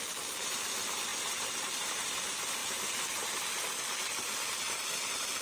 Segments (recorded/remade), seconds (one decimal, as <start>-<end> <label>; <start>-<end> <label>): 0.0-5.4 recorded